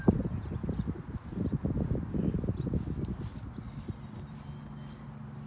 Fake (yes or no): no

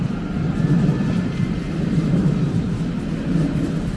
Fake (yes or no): no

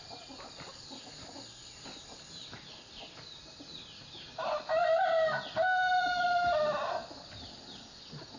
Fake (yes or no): no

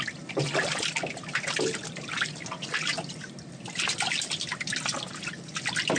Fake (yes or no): no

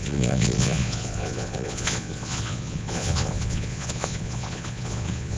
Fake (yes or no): yes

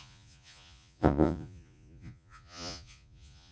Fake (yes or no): yes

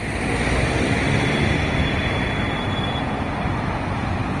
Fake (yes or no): no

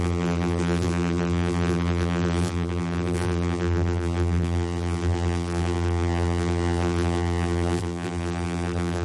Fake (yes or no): yes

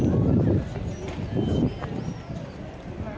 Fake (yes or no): no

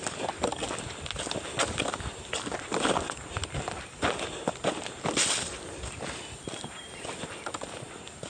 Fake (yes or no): no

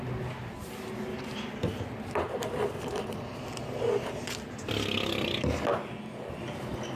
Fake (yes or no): no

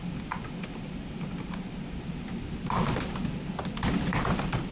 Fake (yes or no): no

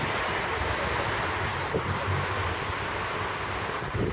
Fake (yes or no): no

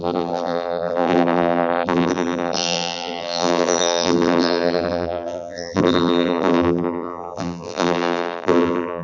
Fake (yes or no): yes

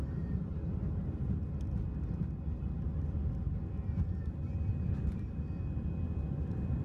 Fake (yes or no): no